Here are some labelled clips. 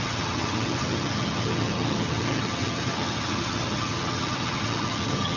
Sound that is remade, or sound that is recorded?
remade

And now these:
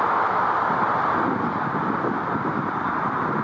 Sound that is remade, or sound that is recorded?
recorded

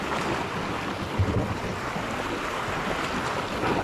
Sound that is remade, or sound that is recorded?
recorded